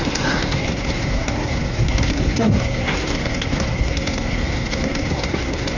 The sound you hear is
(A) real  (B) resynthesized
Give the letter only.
B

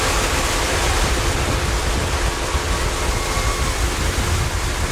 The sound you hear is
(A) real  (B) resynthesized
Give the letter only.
A